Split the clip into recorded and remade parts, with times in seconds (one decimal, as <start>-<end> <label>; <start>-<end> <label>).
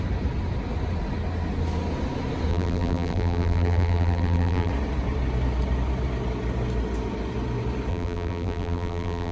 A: 0.0-2.5 recorded; 2.5-4.7 remade; 4.7-7.9 recorded; 7.9-9.3 remade